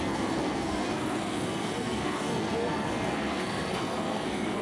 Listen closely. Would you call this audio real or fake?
fake